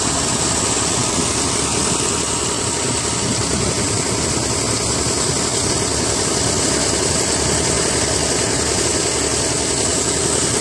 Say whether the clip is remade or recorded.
recorded